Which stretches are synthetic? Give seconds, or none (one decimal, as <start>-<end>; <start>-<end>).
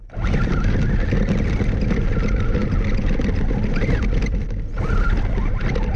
none